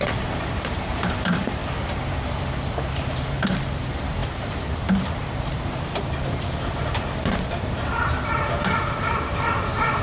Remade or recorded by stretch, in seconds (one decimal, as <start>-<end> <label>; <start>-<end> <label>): 0.0-1.6 remade; 1.6-3.1 recorded; 3.1-10.0 remade